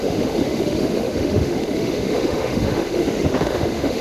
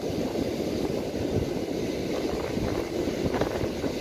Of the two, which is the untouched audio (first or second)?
second